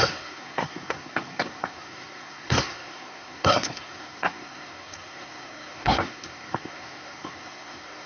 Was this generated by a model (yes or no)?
yes